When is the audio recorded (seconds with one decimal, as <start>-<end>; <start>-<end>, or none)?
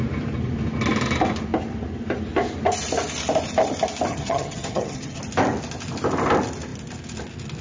0.0-4.1; 5.2-7.6